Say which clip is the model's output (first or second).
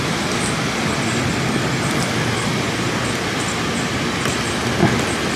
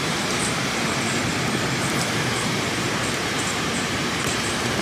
second